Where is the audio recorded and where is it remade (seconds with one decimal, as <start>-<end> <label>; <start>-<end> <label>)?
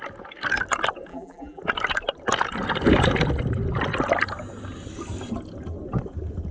0.0-1.1 recorded; 1.1-1.6 remade; 1.6-6.5 recorded